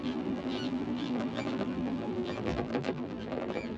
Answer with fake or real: fake